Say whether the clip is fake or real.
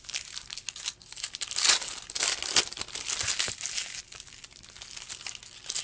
real